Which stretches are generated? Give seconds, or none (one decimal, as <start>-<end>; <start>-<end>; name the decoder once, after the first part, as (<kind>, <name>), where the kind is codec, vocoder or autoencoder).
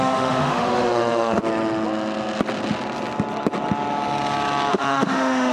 0.0-1.4 (autoencoder, DAC-VAE); 4.7-5.5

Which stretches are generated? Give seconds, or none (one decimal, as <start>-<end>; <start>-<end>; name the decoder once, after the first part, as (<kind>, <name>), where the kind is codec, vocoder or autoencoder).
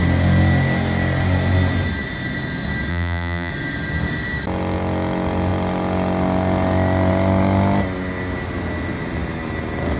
2.9-3.5 (vocoder, BigVGAN v2)